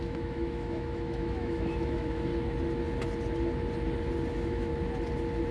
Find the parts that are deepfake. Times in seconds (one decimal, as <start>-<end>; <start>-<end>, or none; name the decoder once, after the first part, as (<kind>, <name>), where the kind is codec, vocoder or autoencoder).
0.0-2.3 (autoencoder, DAC-VAE); 4.3-4.7